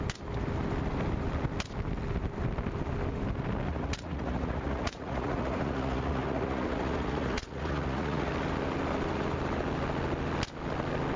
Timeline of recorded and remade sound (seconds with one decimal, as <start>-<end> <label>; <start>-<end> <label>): 0.0-3.7 recorded; 3.7-8.3 remade; 8.3-11.2 recorded